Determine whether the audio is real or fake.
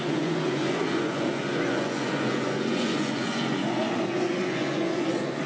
fake